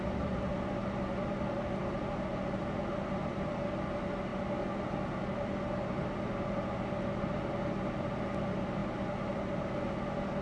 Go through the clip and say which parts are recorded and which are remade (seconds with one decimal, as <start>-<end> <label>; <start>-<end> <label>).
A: 0.0-10.4 recorded